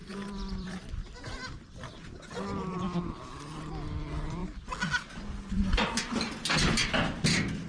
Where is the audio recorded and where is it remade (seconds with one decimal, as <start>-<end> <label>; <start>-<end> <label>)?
0.0-1.3 remade; 1.3-7.7 recorded